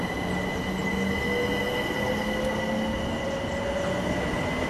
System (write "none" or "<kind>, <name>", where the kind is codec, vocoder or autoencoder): none